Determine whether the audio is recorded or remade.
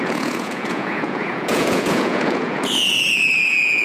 remade